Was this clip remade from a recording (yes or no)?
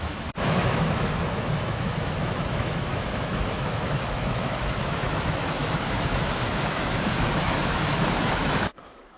yes